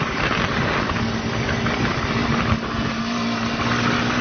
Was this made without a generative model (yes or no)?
yes